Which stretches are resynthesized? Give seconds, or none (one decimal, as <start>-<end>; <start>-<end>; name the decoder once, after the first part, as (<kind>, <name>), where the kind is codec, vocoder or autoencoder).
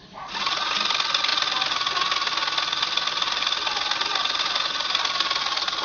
none